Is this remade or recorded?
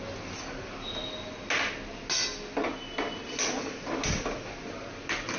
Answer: recorded